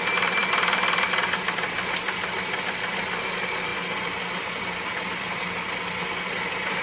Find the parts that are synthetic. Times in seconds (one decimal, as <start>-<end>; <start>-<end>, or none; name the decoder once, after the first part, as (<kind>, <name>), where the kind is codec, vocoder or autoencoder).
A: none